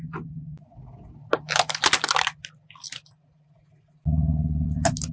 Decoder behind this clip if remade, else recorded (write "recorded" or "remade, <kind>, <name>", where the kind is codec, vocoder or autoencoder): recorded